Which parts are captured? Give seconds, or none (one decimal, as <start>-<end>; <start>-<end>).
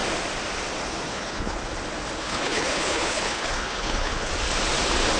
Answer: 0.0-1.1; 1.6-2.2; 4.3-5.2